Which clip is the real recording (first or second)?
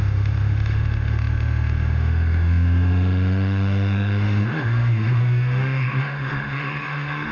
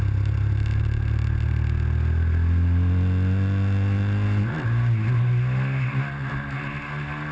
second